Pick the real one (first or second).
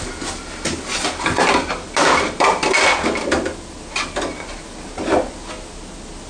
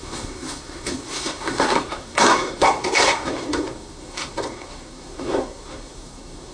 first